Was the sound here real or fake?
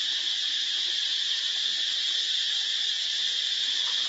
real